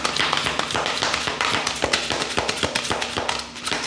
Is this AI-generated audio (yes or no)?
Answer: no